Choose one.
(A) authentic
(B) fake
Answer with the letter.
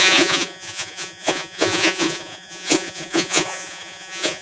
B